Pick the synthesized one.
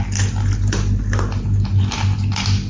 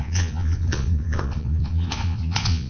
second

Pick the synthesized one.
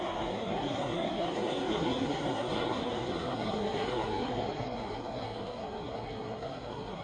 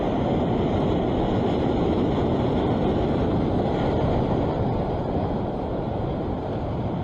first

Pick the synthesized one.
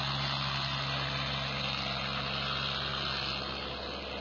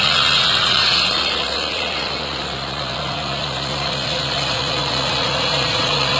second